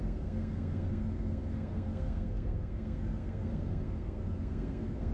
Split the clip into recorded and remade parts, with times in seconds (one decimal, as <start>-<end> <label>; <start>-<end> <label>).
0.0-5.1 remade